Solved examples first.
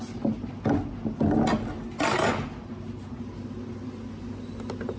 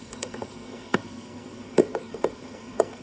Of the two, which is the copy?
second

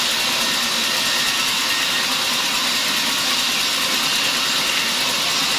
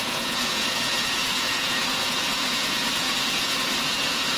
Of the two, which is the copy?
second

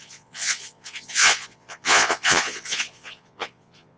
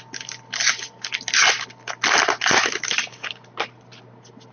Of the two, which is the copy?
first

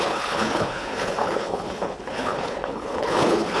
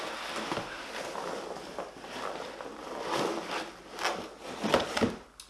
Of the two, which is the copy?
first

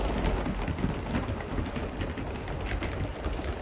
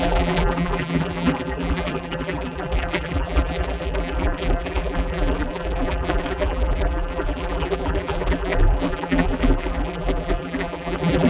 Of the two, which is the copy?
second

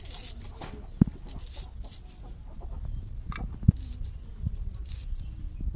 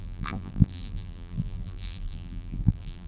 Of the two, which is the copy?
second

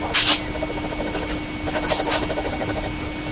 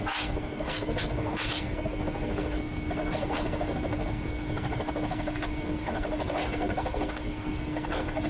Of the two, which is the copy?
second